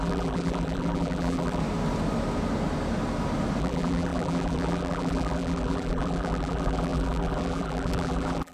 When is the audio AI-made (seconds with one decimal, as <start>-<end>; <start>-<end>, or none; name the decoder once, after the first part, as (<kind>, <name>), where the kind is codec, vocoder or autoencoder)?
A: 0.0-1.6 (vocoder, BigVGAN v2); 3.6-8.5